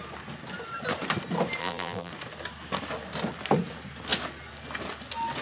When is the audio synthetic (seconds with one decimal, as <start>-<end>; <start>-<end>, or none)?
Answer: 1.6-2.1